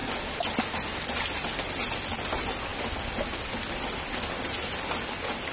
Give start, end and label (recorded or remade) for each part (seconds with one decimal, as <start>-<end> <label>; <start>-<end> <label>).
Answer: 0.0-5.5 recorded